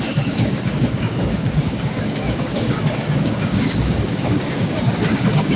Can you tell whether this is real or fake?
fake